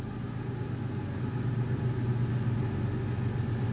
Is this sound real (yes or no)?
yes